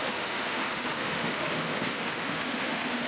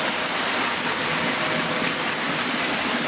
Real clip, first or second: second